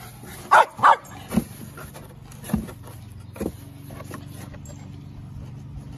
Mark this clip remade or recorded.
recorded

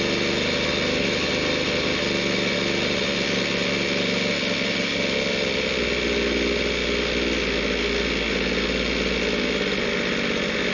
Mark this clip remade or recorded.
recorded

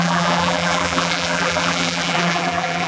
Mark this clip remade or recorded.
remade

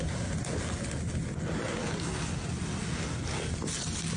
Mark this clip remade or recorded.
recorded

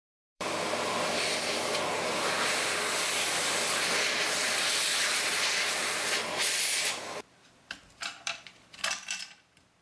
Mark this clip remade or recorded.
remade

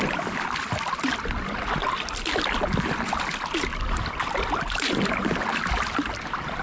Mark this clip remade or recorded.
recorded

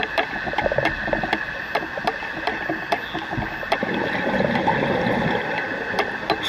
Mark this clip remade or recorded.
recorded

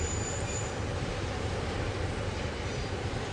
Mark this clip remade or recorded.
remade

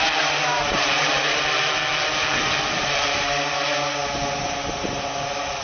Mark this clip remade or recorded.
recorded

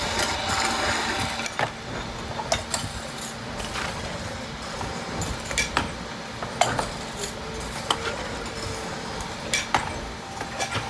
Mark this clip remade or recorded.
recorded